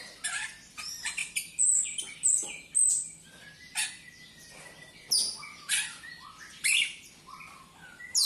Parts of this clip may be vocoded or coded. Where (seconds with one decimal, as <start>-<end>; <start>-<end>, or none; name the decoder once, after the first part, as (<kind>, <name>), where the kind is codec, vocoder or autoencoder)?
none